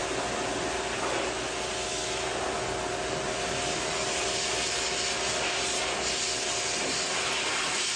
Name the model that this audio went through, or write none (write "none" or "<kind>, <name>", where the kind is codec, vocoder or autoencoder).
none